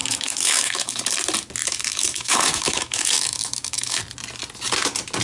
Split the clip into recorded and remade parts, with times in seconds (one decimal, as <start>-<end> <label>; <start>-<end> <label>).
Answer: 0.0-1.0 remade; 1.0-1.6 recorded; 1.6-4.0 remade; 4.0-5.2 recorded